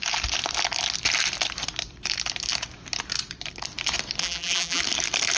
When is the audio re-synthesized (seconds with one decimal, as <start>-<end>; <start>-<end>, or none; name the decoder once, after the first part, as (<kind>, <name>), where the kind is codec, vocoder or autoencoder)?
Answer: 4.2-4.8 (vocoder, BigVGAN v2)